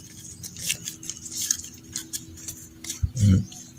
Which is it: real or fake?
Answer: real